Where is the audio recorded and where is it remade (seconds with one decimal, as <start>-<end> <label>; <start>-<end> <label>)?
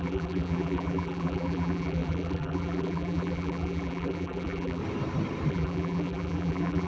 0.0-4.8 remade; 4.8-5.5 recorded; 5.5-6.9 remade